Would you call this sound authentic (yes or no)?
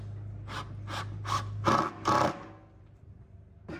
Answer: yes